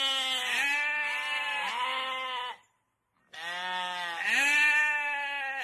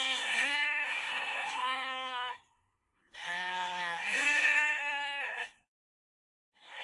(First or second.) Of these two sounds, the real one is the first